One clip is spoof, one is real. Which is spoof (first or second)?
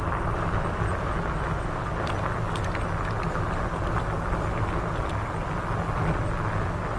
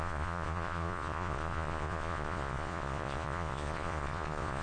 second